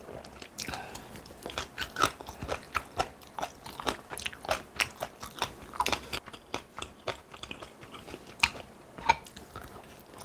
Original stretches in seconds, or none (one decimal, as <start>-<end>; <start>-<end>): 0.0-10.2